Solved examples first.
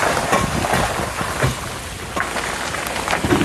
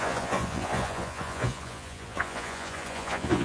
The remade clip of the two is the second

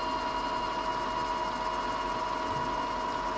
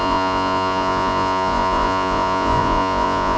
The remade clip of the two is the second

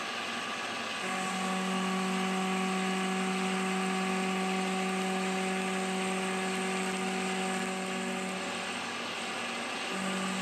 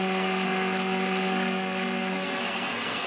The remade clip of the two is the second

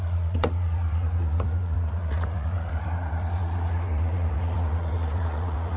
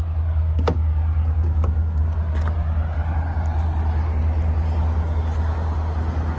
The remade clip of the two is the first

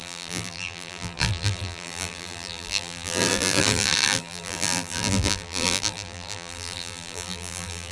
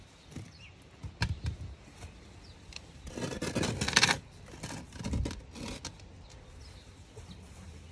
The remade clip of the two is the first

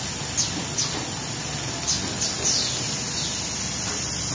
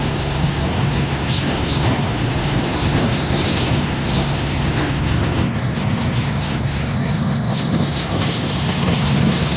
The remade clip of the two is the second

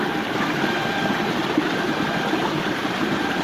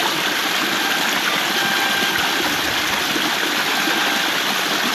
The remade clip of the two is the first